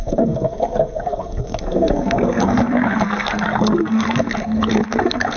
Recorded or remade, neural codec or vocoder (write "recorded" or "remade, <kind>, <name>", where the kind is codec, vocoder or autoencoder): remade, codec, SNAC